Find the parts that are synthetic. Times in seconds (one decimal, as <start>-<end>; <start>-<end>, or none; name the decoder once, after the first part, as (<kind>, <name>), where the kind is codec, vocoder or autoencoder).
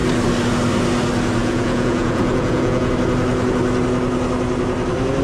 1.4-2.9 (vocoder, Vocos)